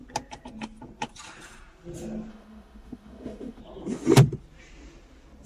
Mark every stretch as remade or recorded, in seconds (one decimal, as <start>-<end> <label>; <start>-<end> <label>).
0.0-2.3 recorded; 2.3-3.6 remade; 3.6-5.5 recorded